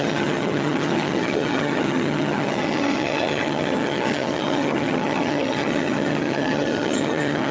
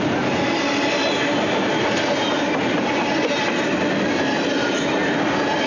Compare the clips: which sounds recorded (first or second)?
second